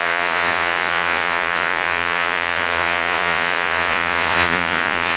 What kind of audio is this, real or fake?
fake